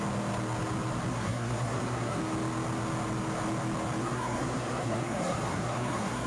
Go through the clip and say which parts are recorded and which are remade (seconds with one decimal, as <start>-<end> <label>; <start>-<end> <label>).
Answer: 0.0-1.1 recorded; 1.1-2.2 remade; 2.2-4.0 recorded; 4.0-6.3 remade